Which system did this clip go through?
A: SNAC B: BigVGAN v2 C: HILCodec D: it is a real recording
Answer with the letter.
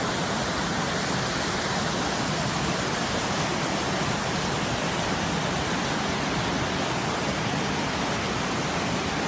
D